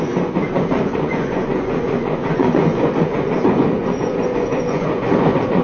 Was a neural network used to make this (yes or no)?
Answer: yes